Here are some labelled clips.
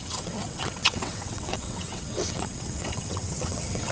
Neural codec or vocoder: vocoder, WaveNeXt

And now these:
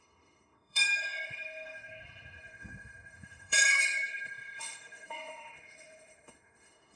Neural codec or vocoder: autoencoder, DAC-VAE